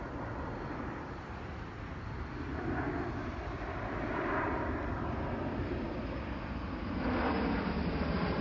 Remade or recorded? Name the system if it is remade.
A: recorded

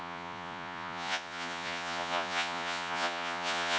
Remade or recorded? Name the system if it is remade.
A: remade, vocoder, Vocos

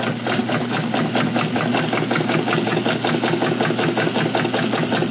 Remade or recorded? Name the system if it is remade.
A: recorded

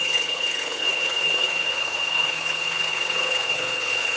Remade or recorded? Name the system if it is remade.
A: remade, codec, HILCodec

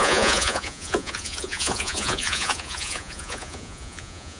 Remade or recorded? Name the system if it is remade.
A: remade, vocoder, Vocos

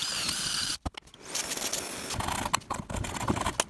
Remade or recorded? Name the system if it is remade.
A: recorded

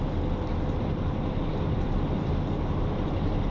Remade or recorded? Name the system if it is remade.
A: recorded